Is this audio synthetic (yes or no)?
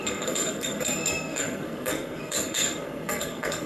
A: yes